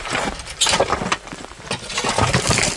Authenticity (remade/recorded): recorded